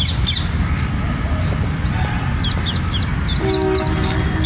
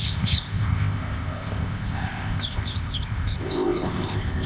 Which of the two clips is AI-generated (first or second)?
second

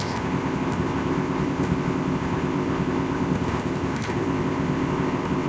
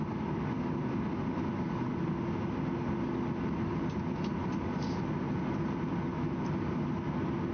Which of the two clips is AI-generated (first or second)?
first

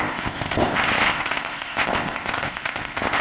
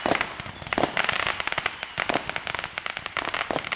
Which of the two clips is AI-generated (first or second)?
first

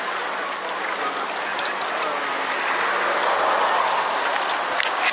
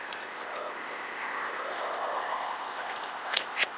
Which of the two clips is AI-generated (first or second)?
second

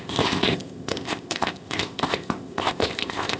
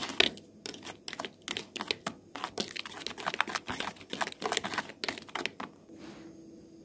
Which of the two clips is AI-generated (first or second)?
first